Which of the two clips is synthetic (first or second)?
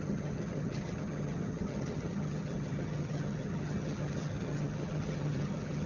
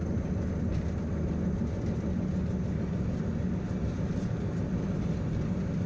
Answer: first